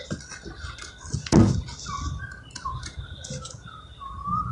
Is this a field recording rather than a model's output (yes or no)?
yes